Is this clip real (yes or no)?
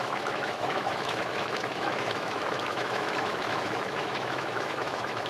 no